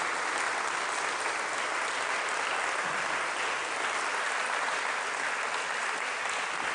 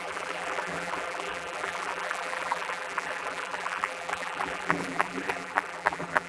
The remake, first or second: second